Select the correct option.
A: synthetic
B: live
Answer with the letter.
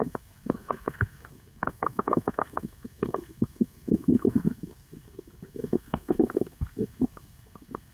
A